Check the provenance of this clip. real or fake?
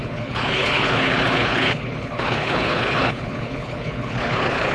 fake